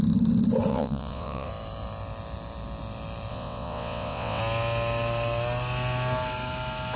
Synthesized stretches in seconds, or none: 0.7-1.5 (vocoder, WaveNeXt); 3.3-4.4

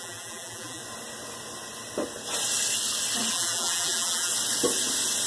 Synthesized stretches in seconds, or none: 0.0-0.8 (vocoder, BigVGAN v2); 3.3-4.3

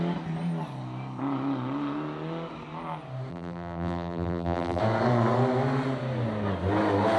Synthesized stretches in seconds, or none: 3.3-4.8 (vocoder, BigVGAN v2)

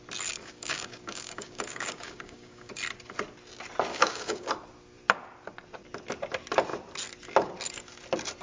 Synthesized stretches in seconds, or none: 0.4-2.7 (codec, DAC); 3.9-4.5

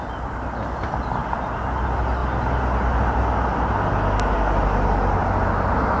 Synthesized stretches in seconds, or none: none